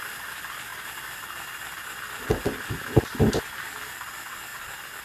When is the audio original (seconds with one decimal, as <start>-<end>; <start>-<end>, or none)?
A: 0.0-5.0